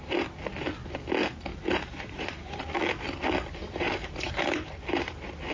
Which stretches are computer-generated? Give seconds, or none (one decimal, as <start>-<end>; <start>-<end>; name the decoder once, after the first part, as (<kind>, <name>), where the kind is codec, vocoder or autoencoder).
1.5-2.7 (vocoder, BigVGAN v2); 3.6-4.4